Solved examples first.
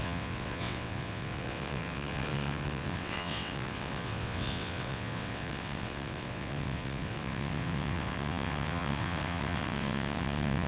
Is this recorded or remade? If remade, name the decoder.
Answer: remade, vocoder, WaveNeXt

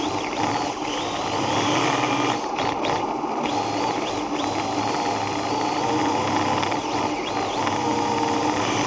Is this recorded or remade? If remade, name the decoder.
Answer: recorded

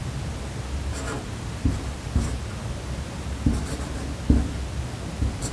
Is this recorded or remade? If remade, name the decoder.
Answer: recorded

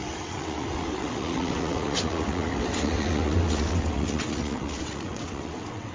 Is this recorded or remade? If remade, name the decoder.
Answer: remade, vocoder, WaveNeXt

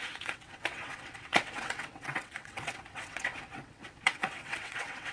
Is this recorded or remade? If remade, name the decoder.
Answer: remade, vocoder, WaveNeXt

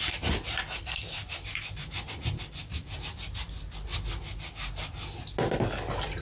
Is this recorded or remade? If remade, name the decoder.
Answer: recorded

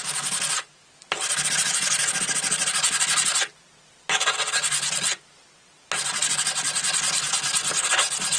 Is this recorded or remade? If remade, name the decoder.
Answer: recorded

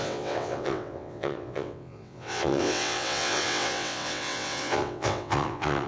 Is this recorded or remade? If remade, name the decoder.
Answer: remade, vocoder, WaveNeXt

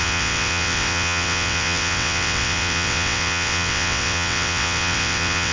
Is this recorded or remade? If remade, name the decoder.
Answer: remade, vocoder, WaveNeXt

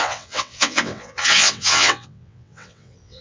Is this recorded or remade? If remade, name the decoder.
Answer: remade, vocoder, WaveNeXt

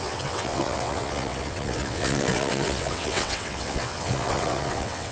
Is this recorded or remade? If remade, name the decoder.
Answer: remade, vocoder, WaveNeXt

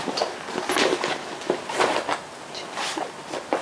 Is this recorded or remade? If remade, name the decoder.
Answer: recorded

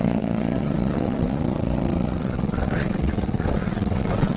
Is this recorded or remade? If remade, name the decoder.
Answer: remade, vocoder, WaveNeXt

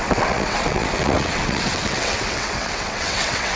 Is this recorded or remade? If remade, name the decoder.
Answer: remade, vocoder, WaveNeXt